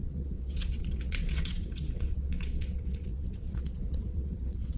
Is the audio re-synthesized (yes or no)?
yes